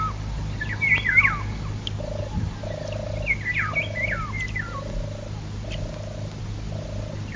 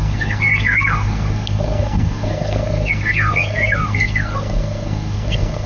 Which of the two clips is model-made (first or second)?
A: second